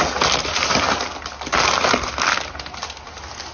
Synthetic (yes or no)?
no